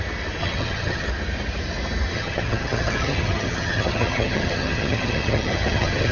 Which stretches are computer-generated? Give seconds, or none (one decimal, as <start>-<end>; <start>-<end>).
0.4-1.1; 2.1-6.1